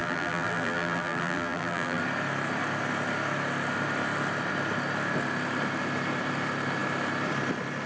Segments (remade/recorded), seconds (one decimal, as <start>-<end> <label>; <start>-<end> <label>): 0.0-2.0 remade; 2.0-7.9 recorded